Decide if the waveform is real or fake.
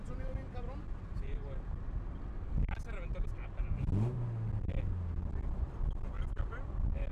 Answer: real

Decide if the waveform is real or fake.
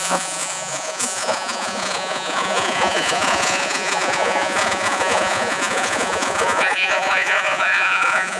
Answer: fake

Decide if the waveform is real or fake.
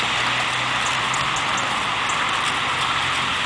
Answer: real